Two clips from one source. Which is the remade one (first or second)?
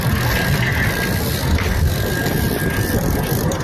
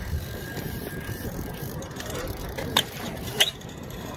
second